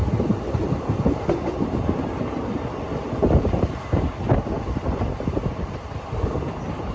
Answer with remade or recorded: recorded